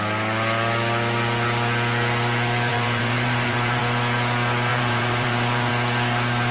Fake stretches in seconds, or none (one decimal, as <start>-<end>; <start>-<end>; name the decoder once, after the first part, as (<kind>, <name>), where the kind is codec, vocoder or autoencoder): 2.7-3.8 (vocoder, BigVGAN v2); 4.7-5.7